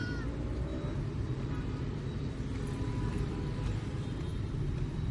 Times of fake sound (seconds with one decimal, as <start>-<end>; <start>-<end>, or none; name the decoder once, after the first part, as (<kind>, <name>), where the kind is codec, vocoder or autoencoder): 3.1-5.1 (vocoder, BigVGAN v2)